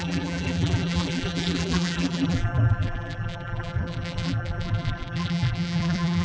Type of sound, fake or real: fake